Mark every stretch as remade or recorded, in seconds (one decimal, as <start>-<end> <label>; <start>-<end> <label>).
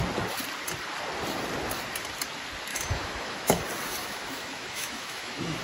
0.0-2.7 recorded; 2.7-3.6 remade; 3.6-4.0 recorded; 4.0-5.6 remade